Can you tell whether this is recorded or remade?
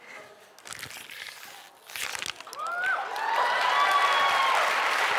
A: recorded